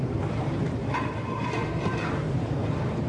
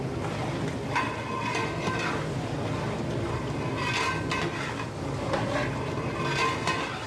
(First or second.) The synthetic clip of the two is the first